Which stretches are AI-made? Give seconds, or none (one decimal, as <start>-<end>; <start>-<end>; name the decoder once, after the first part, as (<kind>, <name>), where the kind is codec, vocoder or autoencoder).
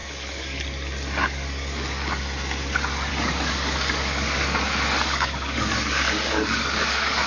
0.0-0.6 (codec, DAC); 1.2-2.2; 3.1-7.3